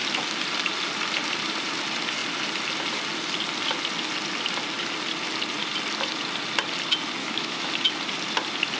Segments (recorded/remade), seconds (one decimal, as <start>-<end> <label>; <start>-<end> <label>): 0.0-7.2 recorded; 7.2-7.7 remade; 7.7-8.8 recorded